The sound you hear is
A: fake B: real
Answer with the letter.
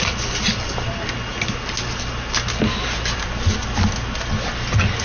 B